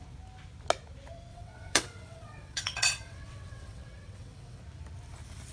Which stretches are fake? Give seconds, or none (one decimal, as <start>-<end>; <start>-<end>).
1.3-4.6